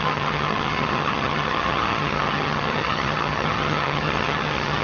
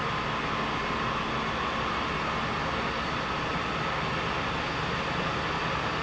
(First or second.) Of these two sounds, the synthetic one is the first